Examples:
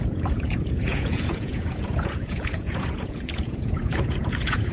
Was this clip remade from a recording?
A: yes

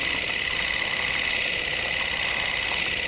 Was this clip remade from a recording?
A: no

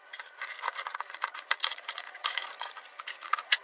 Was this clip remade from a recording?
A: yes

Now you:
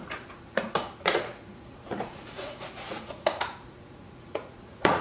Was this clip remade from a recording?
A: yes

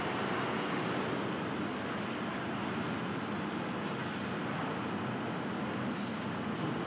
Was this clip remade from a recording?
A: no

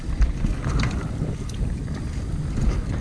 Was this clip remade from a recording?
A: no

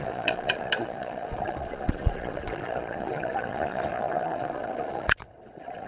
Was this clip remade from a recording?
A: yes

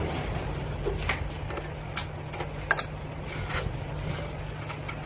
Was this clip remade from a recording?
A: no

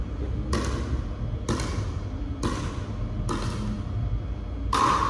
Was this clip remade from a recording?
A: no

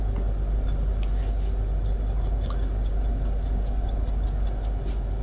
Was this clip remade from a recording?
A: no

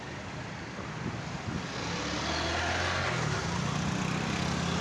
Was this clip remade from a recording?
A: no